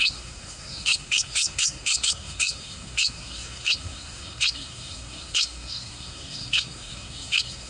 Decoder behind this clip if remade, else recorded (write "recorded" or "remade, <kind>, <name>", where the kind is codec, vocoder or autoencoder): remade, codec, SNAC